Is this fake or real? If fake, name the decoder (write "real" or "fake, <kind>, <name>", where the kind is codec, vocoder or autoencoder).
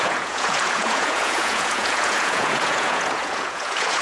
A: fake, vocoder, Vocos